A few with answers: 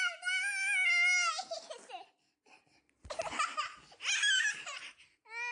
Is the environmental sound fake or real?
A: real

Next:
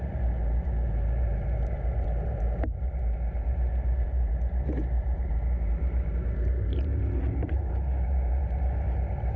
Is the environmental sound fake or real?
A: fake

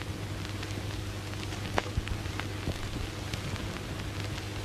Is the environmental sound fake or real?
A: real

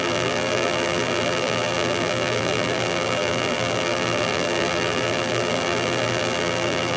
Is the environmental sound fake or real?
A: fake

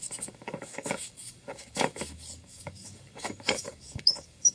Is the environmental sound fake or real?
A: fake